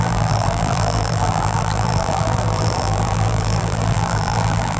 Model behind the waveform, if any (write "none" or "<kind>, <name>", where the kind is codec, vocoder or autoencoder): vocoder, BigVGAN v2